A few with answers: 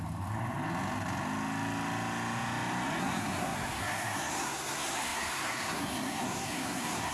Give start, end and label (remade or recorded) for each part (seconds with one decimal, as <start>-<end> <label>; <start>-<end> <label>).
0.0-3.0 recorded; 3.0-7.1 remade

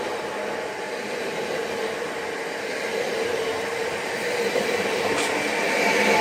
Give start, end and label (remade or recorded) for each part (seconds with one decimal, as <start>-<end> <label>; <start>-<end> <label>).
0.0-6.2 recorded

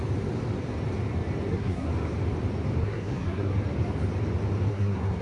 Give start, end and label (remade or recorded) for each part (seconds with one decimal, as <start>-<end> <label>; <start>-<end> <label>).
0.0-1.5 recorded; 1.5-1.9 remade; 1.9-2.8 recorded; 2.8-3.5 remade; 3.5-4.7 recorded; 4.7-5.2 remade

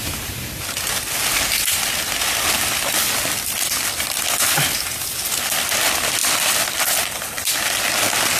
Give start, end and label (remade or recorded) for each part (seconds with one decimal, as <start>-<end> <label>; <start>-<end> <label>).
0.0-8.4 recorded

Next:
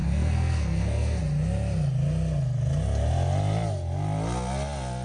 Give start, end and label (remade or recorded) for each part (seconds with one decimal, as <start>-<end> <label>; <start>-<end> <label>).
0.0-1.2 remade; 1.2-5.0 recorded

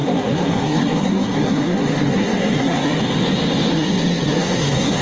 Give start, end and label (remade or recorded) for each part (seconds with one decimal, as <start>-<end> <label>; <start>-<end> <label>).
0.0-3.0 remade; 3.0-3.7 recorded; 3.7-5.0 remade

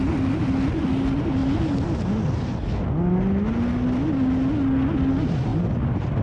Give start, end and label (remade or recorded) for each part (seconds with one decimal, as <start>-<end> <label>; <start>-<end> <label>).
0.0-6.2 recorded

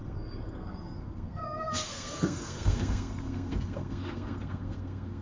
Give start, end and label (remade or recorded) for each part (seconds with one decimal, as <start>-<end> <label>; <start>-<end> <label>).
0.0-5.2 remade